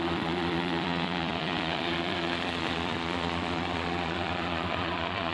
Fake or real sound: fake